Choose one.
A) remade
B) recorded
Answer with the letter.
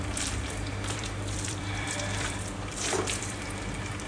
A